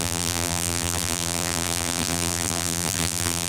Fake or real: fake